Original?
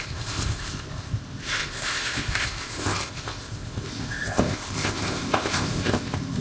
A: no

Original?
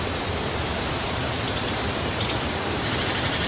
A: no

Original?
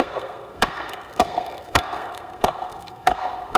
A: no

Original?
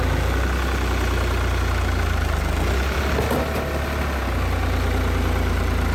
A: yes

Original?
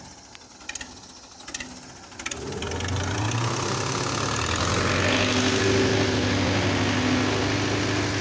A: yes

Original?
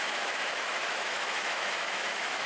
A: no